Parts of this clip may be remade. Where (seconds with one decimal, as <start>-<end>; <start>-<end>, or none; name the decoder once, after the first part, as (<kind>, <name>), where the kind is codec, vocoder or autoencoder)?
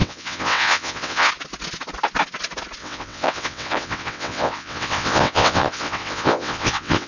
0.0-1.3 (vocoder, WaveNeXt); 2.8-7.1